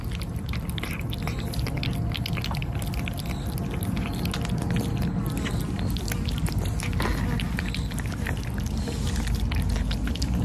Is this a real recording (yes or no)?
yes